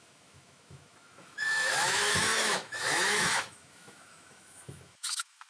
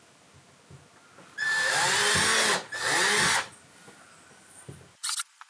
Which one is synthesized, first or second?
first